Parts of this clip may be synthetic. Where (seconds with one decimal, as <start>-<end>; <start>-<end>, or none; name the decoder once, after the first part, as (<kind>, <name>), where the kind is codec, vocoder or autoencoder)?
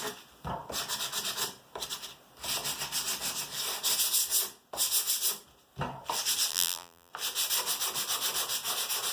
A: 6.5-7.1 (vocoder, BigVGAN v2)